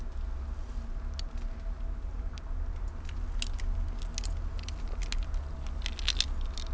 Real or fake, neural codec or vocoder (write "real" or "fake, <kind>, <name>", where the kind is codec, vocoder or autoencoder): real